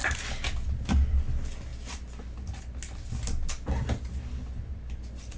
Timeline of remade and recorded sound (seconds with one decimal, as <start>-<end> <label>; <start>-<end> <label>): 0.0-5.4 recorded